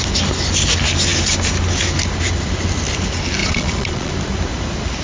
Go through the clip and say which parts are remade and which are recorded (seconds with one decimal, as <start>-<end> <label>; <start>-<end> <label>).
0.0-3.4 recorded; 3.4-4.1 remade; 4.1-5.0 recorded